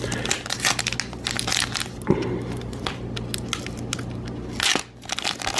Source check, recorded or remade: recorded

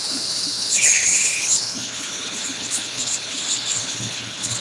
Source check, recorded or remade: remade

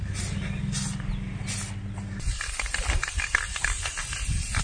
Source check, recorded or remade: recorded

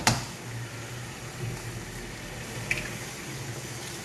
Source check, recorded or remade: recorded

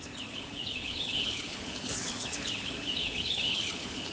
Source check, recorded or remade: remade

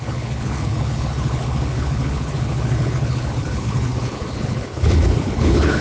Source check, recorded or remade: remade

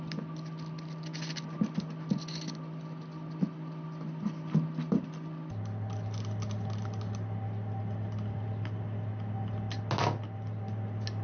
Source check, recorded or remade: recorded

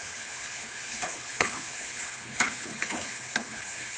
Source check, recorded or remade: remade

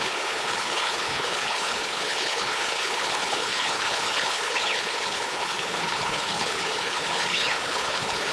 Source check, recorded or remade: remade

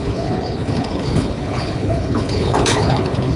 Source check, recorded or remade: remade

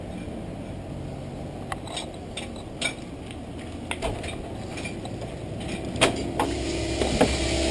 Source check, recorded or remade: recorded